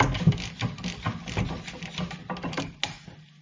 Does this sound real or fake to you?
real